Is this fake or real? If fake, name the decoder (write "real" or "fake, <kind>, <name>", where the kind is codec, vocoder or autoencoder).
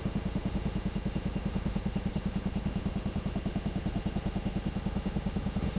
fake, autoencoder, DAC-VAE